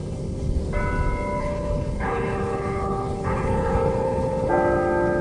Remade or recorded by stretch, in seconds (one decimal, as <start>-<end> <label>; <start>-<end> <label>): 0.0-0.6 remade; 0.6-1.4 recorded; 1.4-4.5 remade; 4.5-5.2 recorded

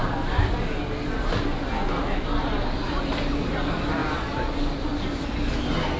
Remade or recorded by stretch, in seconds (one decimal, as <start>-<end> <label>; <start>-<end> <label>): 0.0-6.0 recorded